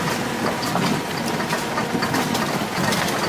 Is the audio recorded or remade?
recorded